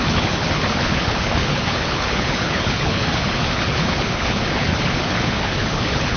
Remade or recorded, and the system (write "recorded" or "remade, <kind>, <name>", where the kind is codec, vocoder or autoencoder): remade, codec, HILCodec